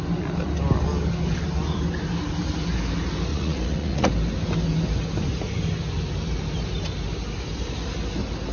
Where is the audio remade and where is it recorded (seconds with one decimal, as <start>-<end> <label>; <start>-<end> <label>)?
0.0-3.3 recorded; 3.3-4.1 remade; 4.1-8.5 recorded